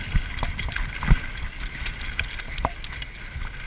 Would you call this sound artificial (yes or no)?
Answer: no